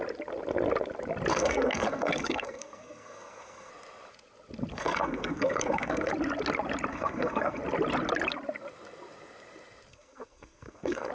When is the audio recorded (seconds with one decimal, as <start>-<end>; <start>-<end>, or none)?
0.0-1.3; 3.7-4.7; 6.1-6.9; 7.6-9.9